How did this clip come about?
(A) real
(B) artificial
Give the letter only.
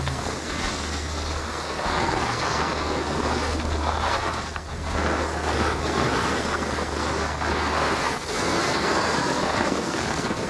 B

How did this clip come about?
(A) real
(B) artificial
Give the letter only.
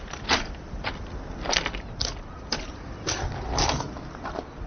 A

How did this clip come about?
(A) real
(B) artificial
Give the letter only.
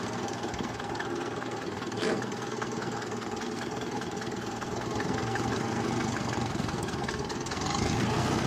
B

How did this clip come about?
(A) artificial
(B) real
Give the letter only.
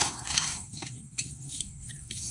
A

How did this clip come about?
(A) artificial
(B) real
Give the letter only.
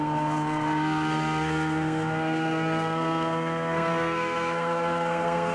A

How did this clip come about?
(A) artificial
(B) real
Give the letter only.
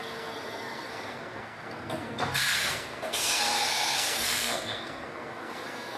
A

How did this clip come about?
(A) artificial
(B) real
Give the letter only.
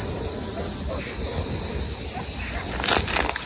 B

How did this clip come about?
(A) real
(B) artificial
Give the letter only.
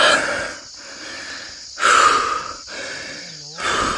A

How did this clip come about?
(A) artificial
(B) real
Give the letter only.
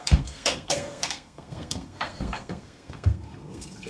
A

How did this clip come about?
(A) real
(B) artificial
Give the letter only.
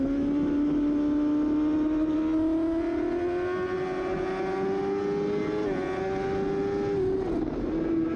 A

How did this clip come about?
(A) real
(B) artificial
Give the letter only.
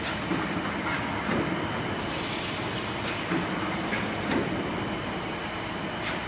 A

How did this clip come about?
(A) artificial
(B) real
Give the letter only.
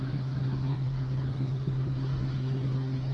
A